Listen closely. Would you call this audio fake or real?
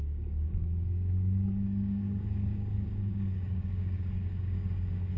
fake